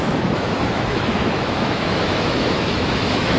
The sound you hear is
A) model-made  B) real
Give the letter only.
A